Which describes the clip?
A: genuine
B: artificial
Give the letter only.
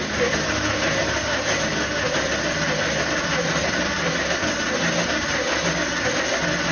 A